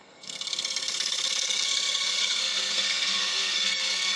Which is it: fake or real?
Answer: fake